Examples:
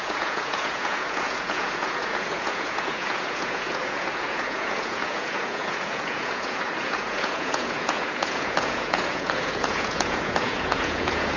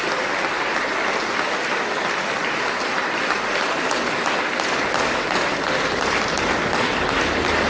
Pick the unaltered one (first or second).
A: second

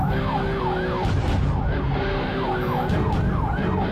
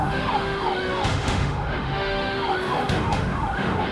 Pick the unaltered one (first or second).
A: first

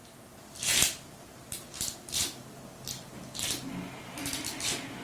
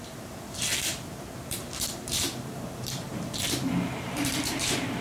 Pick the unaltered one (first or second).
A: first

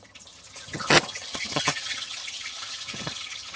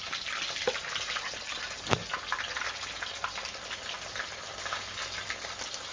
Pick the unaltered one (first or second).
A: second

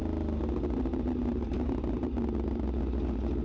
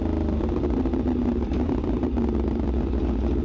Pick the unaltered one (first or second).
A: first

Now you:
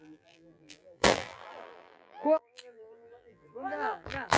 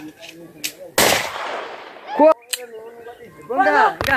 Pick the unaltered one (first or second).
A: second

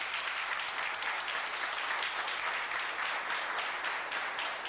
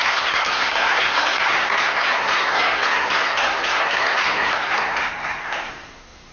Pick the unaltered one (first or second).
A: first